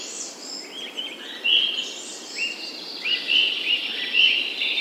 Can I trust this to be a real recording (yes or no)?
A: yes